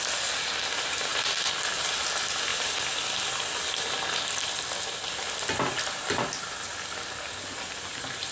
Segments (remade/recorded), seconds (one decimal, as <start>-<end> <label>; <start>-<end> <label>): 0.0-8.3 recorded